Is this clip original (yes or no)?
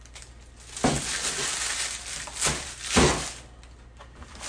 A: yes